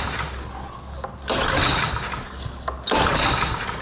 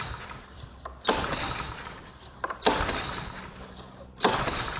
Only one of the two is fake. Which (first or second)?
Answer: second